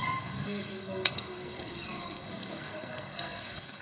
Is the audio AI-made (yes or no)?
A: yes